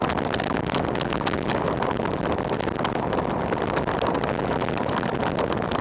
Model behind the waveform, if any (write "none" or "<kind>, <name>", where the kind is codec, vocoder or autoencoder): none